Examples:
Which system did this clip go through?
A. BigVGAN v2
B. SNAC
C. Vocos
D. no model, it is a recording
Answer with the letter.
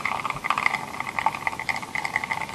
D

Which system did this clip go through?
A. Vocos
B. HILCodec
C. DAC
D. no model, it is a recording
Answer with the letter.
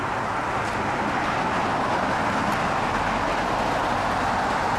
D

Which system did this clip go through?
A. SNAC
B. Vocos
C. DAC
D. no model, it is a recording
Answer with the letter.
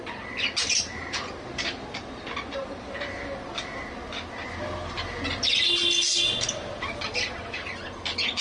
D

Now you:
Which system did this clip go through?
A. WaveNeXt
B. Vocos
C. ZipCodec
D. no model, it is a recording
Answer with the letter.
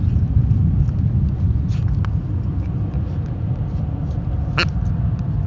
D